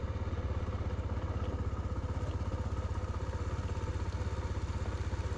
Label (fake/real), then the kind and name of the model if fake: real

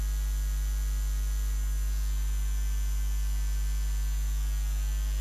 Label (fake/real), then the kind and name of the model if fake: real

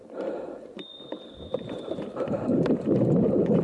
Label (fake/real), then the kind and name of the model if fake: fake, vocoder, BigVGAN v2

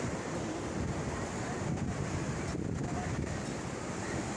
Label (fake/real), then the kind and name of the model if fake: real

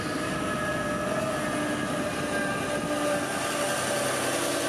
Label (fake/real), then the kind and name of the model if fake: real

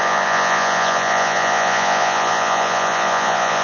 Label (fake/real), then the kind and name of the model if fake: fake, vocoder, Vocos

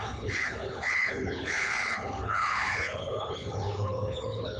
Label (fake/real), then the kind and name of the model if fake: fake, codec, HILCodec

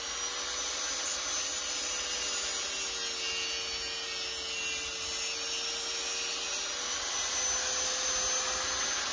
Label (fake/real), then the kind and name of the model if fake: real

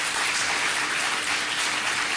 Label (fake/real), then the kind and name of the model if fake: real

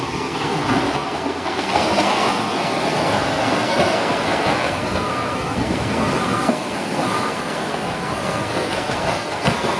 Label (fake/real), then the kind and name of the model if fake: fake, codec, SNAC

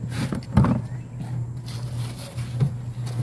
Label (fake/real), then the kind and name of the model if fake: real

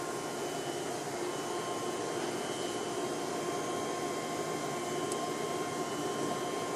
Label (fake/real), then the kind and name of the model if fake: real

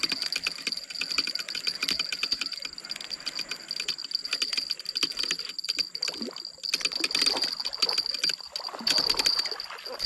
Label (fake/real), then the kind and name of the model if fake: real